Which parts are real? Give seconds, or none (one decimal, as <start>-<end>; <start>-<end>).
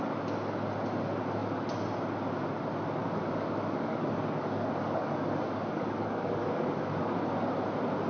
0.0-3.0; 7.0-8.1